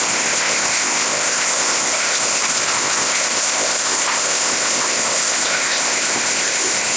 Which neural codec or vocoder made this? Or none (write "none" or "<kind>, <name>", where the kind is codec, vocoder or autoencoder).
codec, ZipCodec